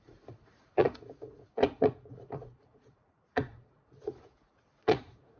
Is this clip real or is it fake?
fake